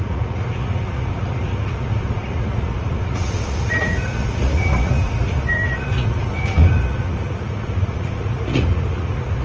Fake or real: fake